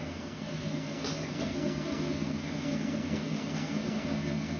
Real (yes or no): no